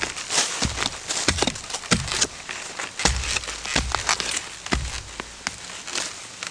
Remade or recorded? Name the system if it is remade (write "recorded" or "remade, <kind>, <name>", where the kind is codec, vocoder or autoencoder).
recorded